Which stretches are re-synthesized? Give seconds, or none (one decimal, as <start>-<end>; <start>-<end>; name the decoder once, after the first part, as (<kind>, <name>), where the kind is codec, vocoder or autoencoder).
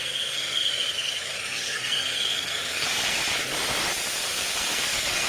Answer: 0.0-3.2 (codec, SNAC); 4.2-5.3